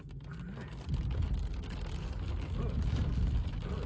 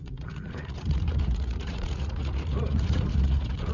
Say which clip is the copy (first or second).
second